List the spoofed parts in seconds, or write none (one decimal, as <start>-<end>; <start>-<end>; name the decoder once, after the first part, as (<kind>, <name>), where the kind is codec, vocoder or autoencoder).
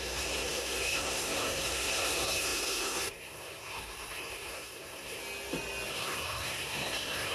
0.0-5.2 (codec, SNAC); 5.9-7.3